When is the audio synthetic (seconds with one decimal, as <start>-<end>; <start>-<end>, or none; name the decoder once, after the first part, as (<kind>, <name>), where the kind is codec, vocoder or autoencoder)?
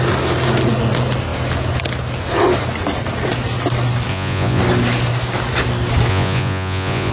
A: 4.1-4.6 (vocoder, Vocos); 6.1-7.1